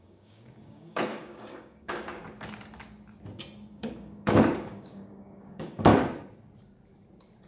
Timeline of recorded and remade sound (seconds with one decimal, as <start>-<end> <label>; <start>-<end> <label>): 0.0-2.2 remade; 2.2-3.7 recorded; 3.7-5.9 remade; 5.9-7.5 recorded